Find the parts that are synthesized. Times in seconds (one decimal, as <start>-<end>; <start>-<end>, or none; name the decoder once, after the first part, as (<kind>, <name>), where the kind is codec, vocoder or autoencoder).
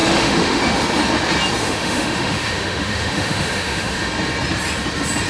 0.0-0.6 (autoencoder, DAC-VAE); 1.6-4.1